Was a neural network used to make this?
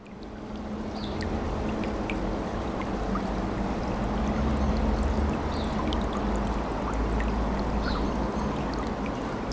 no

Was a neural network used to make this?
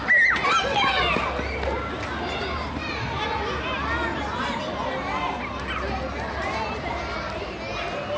no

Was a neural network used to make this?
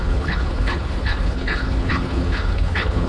yes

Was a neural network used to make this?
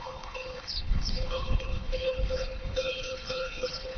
yes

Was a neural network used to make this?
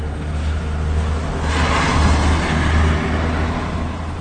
no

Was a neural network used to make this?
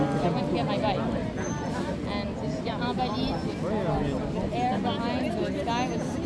no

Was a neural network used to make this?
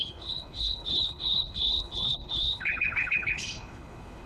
yes